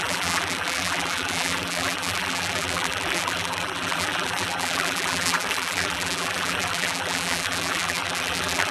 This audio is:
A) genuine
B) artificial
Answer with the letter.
B